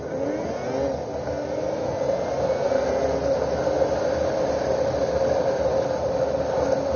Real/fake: real